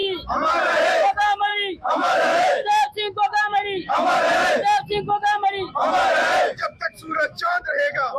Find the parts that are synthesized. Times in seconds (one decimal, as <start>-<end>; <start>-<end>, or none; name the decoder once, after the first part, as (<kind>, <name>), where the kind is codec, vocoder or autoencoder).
1.5-4.2 (autoencoder, DAC-VAE); 6.6-8.2